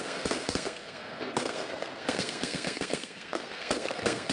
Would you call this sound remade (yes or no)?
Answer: yes